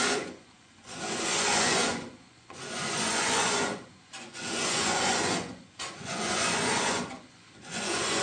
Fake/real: fake